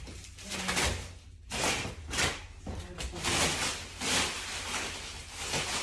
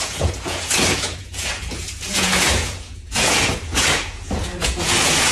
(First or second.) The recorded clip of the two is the first